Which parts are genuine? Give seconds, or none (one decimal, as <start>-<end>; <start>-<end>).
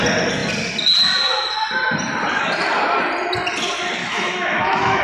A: 0.0-4.0